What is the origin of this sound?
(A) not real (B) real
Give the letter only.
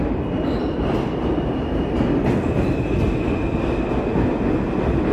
B